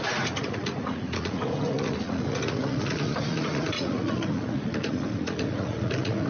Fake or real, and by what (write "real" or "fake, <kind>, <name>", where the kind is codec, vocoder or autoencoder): fake, vocoder, Vocos